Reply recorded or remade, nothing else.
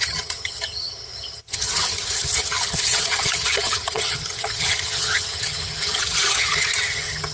remade